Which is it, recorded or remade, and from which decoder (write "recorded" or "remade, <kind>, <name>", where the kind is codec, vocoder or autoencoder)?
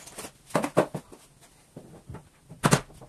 recorded